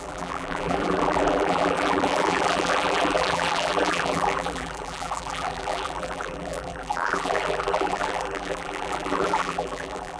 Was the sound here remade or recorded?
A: remade